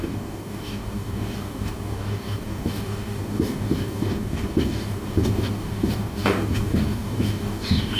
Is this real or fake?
fake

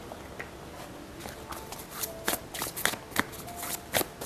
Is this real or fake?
real